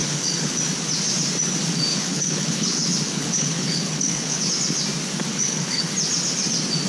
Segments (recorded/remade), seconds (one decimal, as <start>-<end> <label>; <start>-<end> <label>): 0.0-0.6 remade; 0.6-1.9 recorded; 1.9-4.5 remade; 4.5-5.3 recorded; 5.3-5.9 remade; 5.9-6.9 recorded